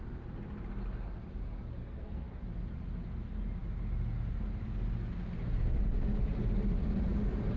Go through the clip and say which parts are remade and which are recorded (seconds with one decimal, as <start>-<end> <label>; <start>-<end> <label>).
0.0-1.8 recorded; 1.8-2.4 remade; 2.4-7.6 recorded